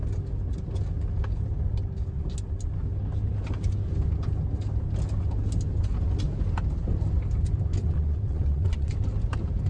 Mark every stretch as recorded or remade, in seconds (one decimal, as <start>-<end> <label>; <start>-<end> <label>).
0.0-7.8 recorded; 7.8-8.9 remade; 8.9-9.7 recorded